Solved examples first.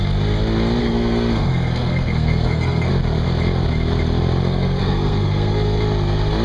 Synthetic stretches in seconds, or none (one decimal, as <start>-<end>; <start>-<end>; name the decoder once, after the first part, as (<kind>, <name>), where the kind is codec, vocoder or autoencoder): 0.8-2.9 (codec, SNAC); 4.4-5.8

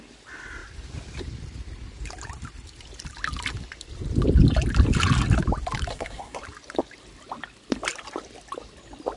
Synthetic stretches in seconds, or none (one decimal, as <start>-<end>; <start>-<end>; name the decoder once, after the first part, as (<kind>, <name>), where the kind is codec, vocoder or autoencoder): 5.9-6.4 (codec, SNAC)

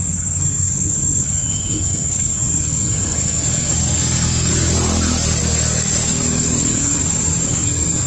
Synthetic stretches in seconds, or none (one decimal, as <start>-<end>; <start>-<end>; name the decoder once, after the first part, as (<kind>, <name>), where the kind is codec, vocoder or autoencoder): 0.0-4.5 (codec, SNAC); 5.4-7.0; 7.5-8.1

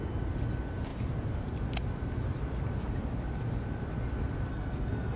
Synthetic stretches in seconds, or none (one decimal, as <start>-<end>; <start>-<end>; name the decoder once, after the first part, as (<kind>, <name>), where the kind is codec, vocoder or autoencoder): 4.5-5.2 (codec, SNAC)

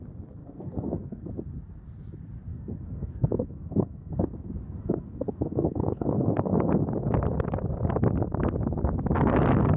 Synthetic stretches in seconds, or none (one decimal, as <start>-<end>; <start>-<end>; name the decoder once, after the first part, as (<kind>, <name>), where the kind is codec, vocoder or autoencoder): 0.4-1.3 (codec, SNAC); 2.5-6.7

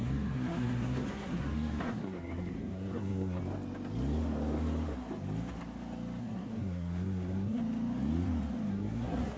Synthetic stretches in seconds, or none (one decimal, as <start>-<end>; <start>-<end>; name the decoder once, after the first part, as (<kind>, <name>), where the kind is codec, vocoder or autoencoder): 0.0-3.4 (codec, SNAC); 6.2-7.6; 8.7-9.4